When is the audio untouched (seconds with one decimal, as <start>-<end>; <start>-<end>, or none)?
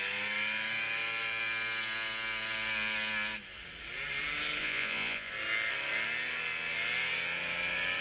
0.0-4.6; 5.3-8.0